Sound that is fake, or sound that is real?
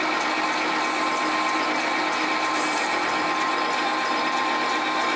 real